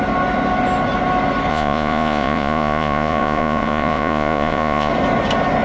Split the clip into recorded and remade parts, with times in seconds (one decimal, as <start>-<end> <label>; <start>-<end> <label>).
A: 0.0-1.5 recorded; 1.5-4.9 remade; 4.9-5.6 recorded